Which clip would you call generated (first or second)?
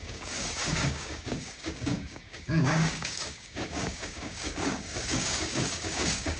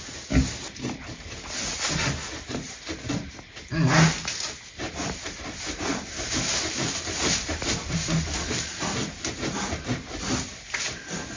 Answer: first